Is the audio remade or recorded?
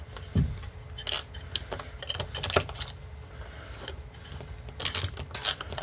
recorded